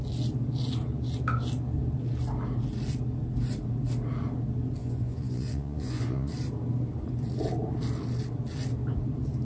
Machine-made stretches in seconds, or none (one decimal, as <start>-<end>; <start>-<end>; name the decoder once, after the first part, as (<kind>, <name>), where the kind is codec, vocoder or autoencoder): 4.8-6.3 (vocoder, Vocos)